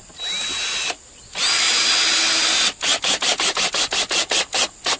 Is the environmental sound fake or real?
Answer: real